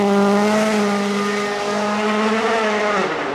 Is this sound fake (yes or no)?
no